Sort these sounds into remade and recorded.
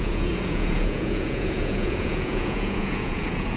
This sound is remade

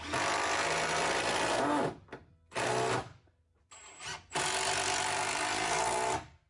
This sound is recorded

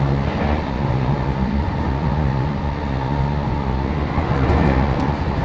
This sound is remade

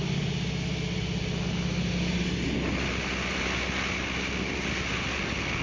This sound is recorded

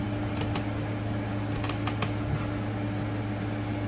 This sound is recorded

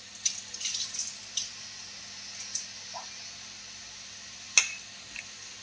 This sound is recorded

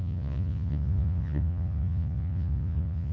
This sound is remade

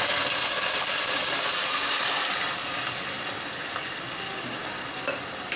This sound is recorded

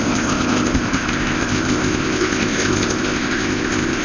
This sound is remade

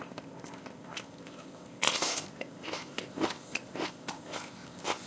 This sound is remade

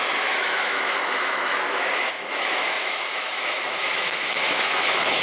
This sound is remade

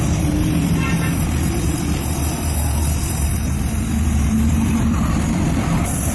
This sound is remade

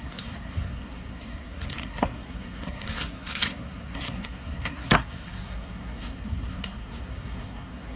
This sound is remade